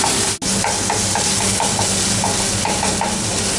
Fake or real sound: real